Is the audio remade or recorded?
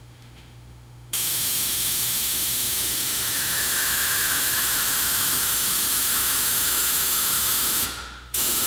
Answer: remade